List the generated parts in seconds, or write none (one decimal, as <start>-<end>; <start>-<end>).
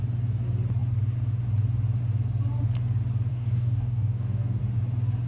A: 3.3-4.6